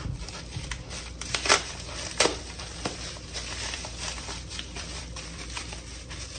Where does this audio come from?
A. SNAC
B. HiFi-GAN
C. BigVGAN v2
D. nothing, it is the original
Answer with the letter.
C